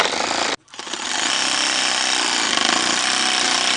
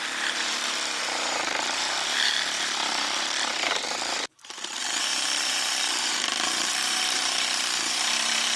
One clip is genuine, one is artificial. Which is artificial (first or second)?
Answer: second